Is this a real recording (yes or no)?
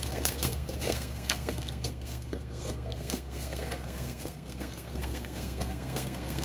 no